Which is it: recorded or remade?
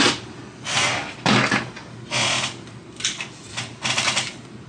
recorded